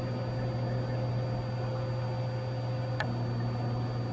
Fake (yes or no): no